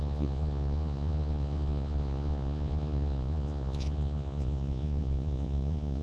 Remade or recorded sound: remade